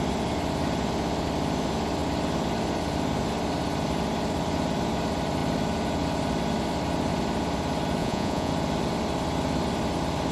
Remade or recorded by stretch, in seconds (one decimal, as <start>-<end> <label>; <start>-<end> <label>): 0.0-8.0 recorded; 8.0-8.5 remade; 8.5-10.3 recorded